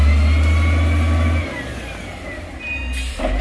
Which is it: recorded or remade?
recorded